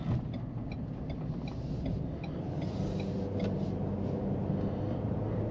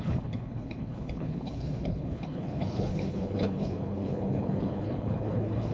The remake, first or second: second